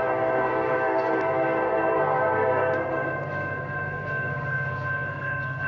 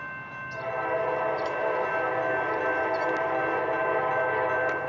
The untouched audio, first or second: second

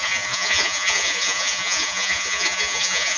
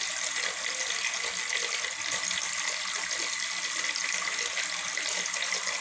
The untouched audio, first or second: second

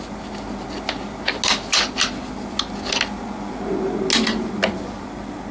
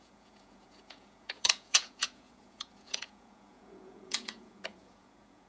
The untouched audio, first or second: first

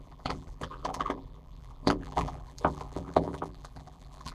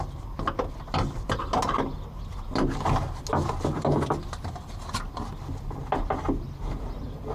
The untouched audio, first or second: second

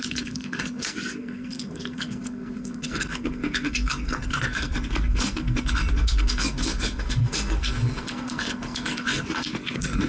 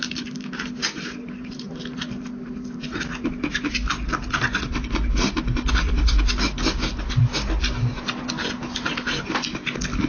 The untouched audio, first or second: second